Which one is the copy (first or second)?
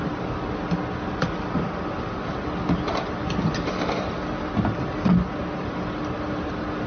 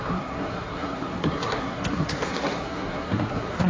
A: second